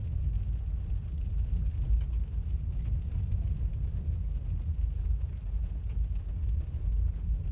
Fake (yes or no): no